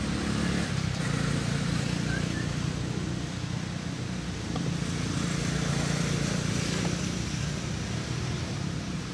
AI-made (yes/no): no